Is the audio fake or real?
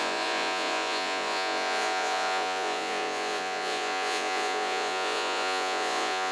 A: fake